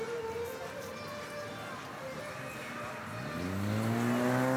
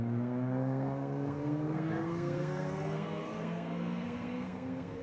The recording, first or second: first